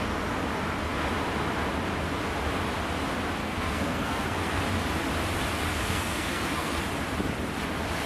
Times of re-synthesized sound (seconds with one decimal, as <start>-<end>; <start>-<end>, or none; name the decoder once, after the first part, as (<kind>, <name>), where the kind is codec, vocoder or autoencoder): 3.4-4.6 (codec, SNAC); 5.7-6.8